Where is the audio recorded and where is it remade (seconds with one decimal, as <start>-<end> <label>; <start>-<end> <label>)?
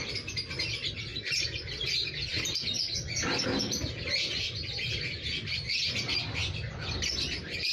0.0-1.1 recorded; 1.1-5.3 remade; 5.3-6.4 recorded; 6.4-7.7 remade